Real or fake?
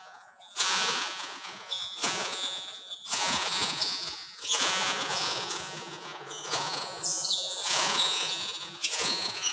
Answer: fake